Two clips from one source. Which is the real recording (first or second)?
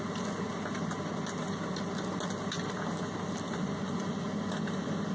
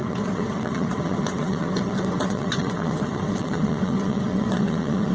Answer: first